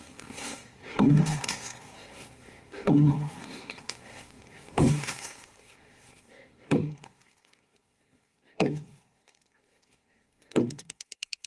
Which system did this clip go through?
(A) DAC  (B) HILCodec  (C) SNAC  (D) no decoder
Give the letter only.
C